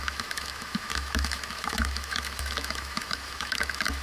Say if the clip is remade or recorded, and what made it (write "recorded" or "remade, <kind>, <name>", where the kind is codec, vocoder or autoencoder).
remade, autoencoder, DAC-VAE